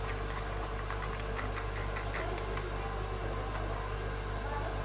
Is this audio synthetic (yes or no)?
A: no